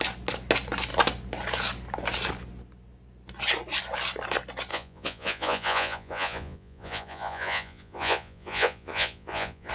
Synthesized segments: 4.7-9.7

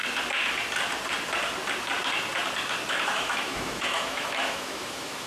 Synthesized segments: 2.9-5.3

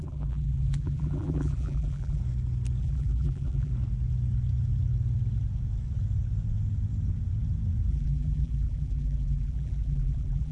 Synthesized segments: 0.0-2.2; 2.8-3.7; 7.9-10.5